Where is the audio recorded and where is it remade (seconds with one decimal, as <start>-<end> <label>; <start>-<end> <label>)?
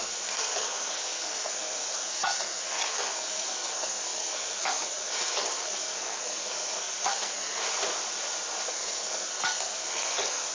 0.0-7.6 remade; 7.6-8.7 recorded; 8.7-10.5 remade